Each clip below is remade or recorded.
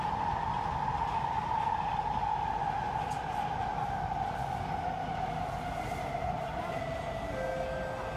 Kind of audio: recorded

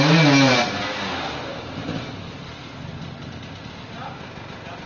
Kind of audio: recorded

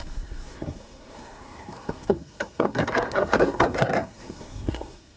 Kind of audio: remade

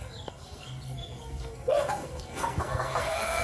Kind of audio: remade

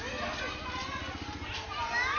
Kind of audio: recorded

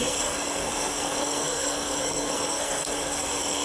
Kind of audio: remade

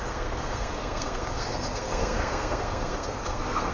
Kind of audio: remade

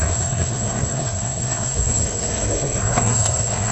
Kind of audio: remade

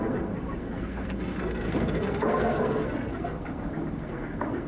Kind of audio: remade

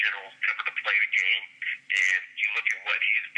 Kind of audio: recorded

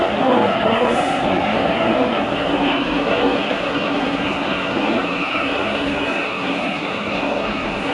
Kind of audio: remade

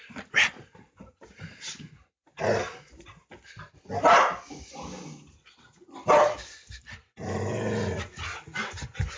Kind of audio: recorded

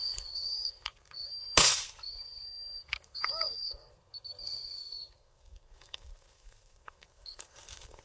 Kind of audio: remade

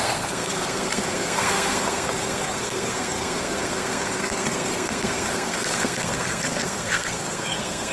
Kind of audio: remade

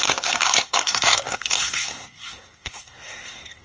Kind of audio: remade